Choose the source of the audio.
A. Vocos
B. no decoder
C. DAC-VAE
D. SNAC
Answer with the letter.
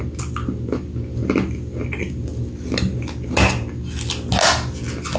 B